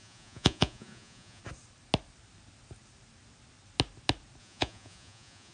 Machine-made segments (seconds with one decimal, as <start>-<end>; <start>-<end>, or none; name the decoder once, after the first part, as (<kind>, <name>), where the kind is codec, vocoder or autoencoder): 0.0-1.4 (vocoder, Vocos); 4.4-5.5